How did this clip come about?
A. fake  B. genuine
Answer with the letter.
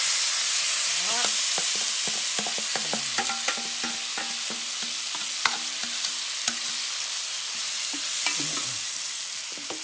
B